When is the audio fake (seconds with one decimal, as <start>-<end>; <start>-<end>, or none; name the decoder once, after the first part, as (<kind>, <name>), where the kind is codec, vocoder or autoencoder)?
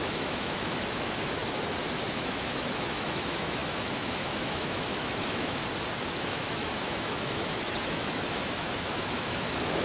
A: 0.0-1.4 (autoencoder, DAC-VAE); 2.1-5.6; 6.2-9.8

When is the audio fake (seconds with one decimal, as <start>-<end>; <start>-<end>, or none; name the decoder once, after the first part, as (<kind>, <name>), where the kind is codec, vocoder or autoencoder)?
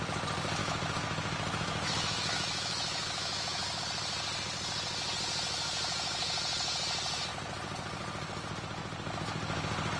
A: 0.6-3.8 (autoencoder, DAC-VAE)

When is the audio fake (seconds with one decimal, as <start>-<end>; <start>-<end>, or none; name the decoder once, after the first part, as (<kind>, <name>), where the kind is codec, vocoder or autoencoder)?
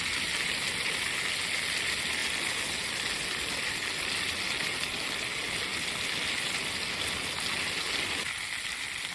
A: none